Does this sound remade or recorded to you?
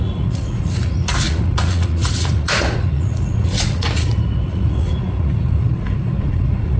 remade